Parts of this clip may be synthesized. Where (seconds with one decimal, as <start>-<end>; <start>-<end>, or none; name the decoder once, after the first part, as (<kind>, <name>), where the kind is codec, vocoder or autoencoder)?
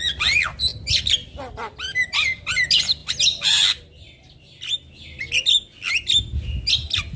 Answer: none